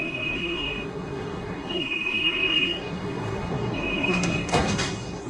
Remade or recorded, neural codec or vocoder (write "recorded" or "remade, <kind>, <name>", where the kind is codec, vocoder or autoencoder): remade, codec, SNAC